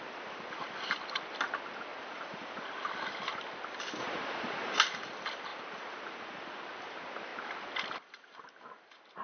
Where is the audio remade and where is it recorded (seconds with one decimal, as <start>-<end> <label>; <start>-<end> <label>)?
0.0-1.9 recorded; 1.9-2.6 remade; 2.6-4.0 recorded; 4.0-4.8 remade; 4.8-5.5 recorded; 5.5-6.6 remade; 6.6-9.2 recorded